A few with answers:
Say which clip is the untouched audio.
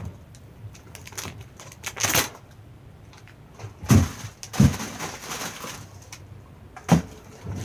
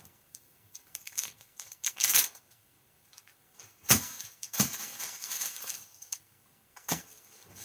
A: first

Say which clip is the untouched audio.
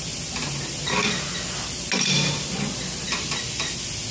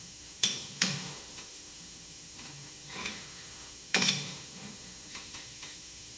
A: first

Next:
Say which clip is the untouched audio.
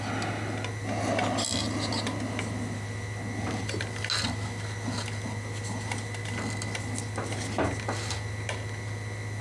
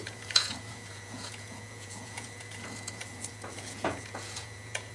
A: first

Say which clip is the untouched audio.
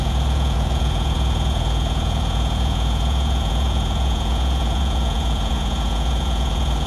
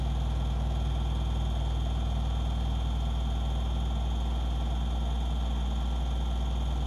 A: second